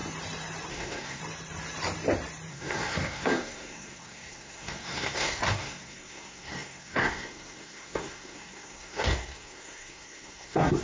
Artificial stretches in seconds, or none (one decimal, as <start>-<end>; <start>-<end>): 0.7-1.2; 2.5-10.8